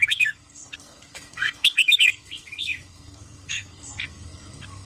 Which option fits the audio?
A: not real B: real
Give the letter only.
A